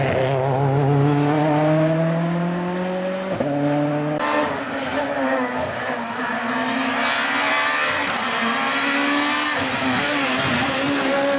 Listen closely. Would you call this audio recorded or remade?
recorded